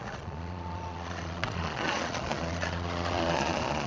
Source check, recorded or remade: remade